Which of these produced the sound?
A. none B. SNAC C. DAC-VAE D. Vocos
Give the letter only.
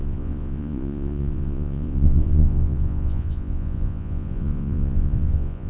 D